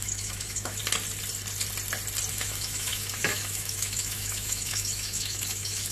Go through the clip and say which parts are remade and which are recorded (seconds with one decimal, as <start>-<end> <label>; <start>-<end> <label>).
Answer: 0.0-0.8 remade; 0.8-2.3 recorded; 2.3-5.9 remade